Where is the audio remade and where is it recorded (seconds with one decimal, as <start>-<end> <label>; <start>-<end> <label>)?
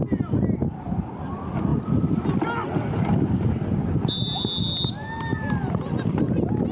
0.0-6.7 recorded